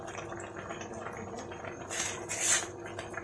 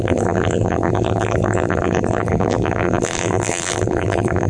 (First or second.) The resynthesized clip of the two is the second